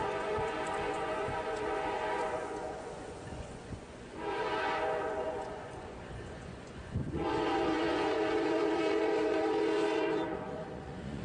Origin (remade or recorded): remade